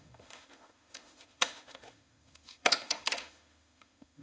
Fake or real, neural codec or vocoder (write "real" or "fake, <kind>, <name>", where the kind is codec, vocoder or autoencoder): fake, autoencoder, DAC-VAE